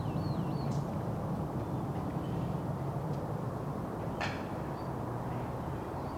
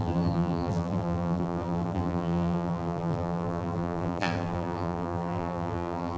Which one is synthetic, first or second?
second